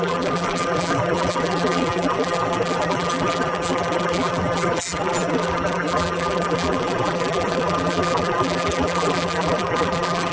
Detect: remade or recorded remade